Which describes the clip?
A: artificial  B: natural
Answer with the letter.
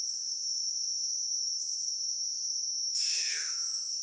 A